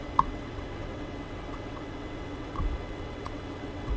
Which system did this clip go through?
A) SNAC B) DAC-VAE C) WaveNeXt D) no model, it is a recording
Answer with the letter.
C